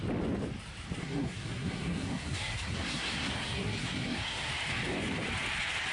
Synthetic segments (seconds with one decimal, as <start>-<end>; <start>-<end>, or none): 1.0-4.5